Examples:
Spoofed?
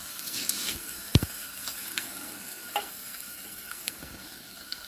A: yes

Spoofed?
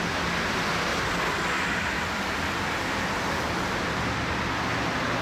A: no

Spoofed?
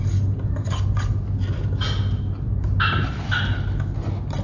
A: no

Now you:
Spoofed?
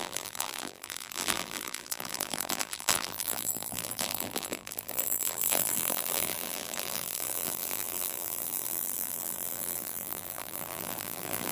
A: yes